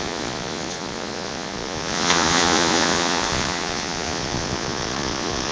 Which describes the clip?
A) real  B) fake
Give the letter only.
B